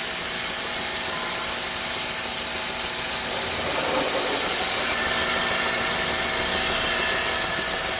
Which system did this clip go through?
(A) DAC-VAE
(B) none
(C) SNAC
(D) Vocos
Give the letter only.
B